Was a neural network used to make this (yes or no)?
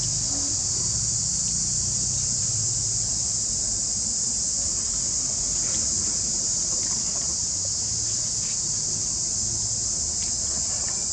no